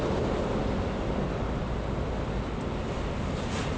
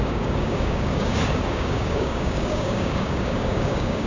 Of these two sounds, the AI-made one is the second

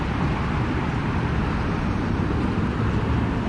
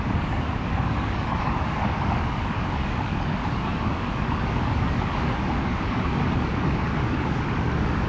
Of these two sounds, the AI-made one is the second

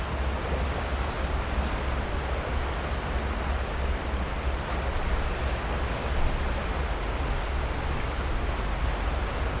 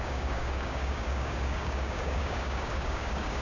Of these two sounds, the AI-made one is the second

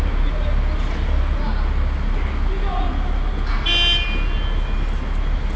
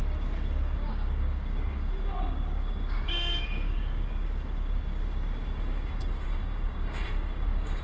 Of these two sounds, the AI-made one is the second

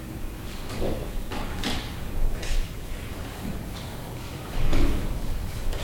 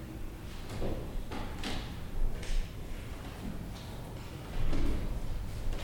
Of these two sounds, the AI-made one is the first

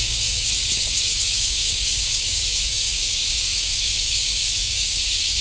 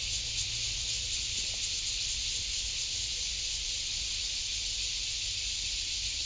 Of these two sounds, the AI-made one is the first